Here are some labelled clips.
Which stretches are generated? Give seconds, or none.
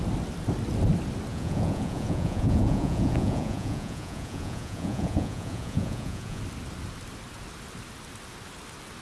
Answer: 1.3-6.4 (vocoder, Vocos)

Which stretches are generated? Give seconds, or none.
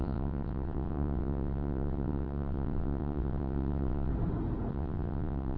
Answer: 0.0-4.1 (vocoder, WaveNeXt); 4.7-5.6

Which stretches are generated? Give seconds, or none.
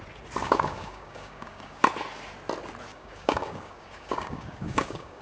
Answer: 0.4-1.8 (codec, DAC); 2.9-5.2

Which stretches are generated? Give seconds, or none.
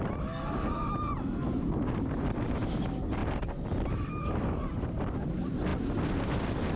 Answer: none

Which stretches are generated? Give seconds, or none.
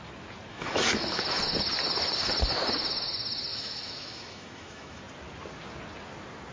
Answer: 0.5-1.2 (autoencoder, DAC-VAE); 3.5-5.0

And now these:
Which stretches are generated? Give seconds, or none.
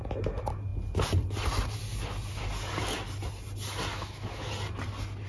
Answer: 3.9-4.5 (autoencoder, DAC-VAE)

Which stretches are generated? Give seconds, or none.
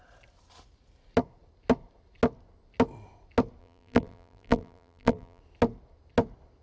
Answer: 3.6-5.4 (vocoder, BigVGAN v2)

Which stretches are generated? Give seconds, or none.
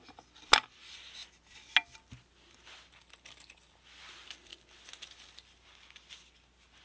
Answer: none